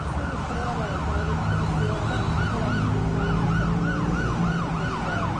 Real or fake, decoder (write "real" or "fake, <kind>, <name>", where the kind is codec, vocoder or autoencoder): real